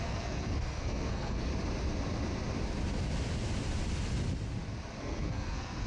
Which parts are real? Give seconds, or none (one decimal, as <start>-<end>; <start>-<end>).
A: 1.5-5.0